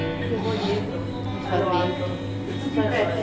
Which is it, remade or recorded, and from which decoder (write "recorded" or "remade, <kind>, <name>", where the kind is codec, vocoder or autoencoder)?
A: recorded